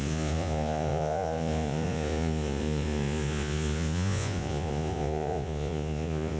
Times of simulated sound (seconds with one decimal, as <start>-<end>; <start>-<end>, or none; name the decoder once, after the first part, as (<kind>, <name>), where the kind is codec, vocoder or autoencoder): 0.0-6.4 (vocoder, Vocos)